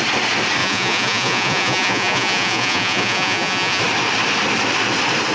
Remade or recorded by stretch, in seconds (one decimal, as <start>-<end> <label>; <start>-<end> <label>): 0.0-0.6 recorded; 0.6-3.8 remade; 3.8-5.3 recorded